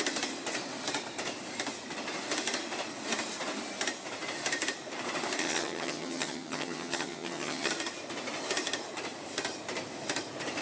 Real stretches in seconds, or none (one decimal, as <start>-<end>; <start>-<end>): 0.0-5.4; 7.7-10.6